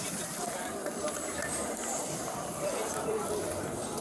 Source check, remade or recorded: remade